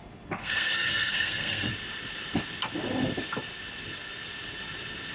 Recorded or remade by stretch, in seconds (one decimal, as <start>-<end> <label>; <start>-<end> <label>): 0.0-0.4 recorded; 0.4-1.7 remade; 1.7-5.1 recorded

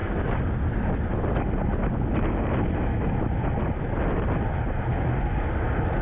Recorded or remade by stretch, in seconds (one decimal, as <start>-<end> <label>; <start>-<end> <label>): 0.0-6.0 recorded

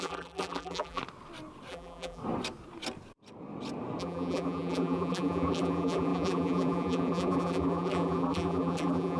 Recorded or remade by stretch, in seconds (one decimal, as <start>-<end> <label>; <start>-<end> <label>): 0.0-1.0 remade; 1.0-1.7 recorded; 1.7-2.2 remade; 2.2-4.0 recorded; 4.0-9.2 remade

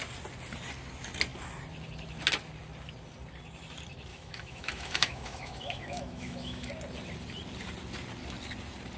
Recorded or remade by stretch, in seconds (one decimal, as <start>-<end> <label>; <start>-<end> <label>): 0.0-4.1 recorded; 4.1-6.7 remade; 6.7-9.0 recorded

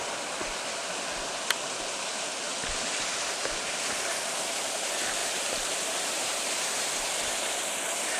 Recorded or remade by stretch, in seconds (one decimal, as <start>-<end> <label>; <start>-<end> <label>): 0.0-5.2 recorded; 5.2-6.6 remade; 6.6-8.2 recorded

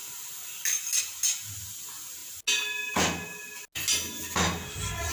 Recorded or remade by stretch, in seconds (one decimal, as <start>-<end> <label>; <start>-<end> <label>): 0.0-5.1 recorded

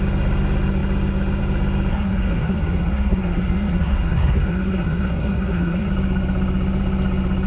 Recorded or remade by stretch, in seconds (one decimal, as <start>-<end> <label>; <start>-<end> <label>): 0.0-1.9 recorded; 1.9-5.9 remade; 5.9-7.5 recorded